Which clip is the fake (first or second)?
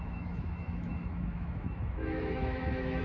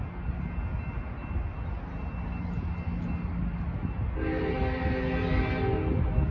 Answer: first